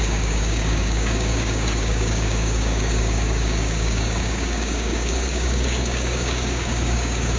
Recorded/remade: remade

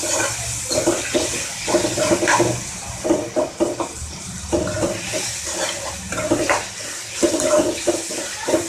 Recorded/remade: recorded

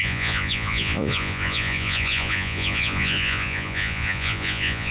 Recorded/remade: remade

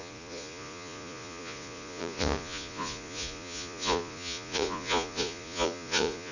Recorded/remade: remade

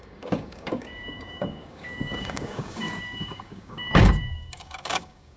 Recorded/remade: remade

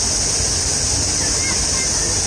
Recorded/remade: recorded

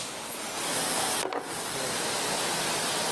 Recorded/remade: recorded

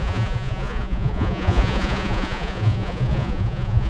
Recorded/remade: remade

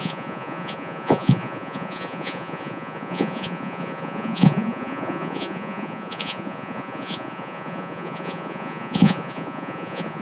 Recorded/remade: remade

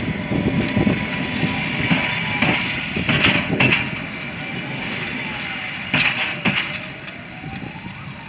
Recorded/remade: recorded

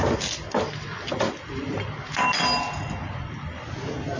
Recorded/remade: recorded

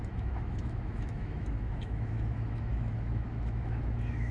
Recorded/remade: remade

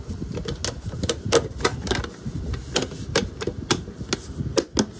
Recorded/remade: recorded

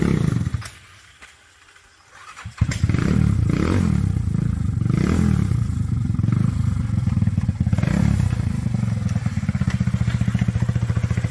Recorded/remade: recorded